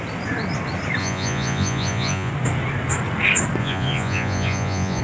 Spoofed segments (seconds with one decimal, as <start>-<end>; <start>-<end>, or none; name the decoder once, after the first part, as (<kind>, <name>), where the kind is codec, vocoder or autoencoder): 1.0-2.3 (vocoder, Vocos); 3.6-5.0